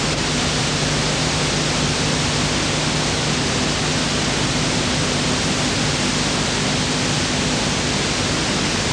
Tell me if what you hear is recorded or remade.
recorded